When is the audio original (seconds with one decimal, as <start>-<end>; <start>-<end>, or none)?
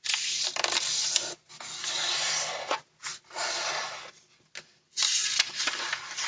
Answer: 0.0-3.1; 3.7-6.3